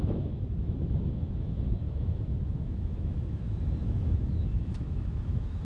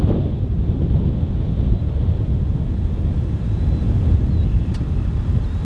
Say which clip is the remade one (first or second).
first